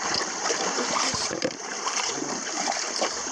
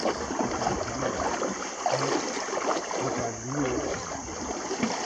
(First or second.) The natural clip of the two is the second